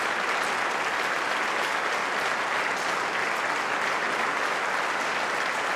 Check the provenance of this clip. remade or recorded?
recorded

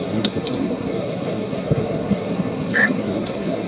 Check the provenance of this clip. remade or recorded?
remade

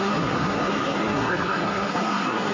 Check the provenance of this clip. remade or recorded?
remade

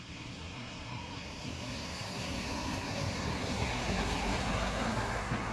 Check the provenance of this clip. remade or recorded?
remade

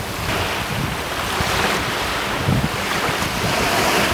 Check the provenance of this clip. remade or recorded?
recorded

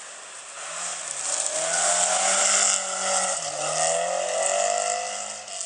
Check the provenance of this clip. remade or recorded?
recorded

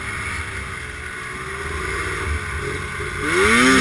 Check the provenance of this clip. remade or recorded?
recorded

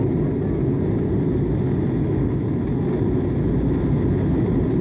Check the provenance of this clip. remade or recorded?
recorded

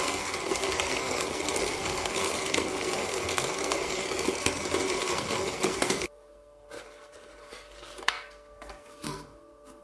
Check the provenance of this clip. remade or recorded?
remade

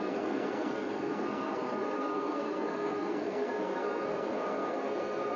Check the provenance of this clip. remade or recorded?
remade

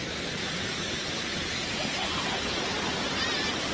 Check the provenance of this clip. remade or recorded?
recorded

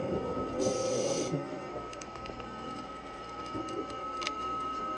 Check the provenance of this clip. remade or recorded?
remade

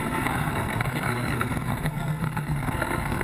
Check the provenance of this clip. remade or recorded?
remade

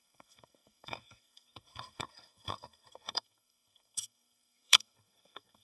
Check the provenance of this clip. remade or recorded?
remade